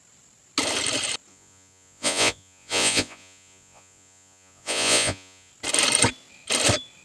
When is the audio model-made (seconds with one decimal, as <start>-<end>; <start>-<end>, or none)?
1.3-5.5